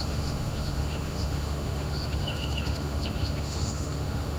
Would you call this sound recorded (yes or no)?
no